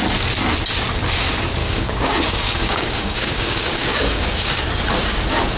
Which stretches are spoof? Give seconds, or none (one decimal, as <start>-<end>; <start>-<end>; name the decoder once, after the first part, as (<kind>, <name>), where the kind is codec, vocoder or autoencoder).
1.6-4.6 (codec, DAC)